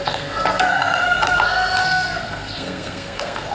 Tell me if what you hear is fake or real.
fake